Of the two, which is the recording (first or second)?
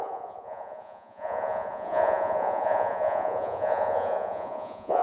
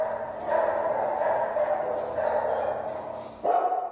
second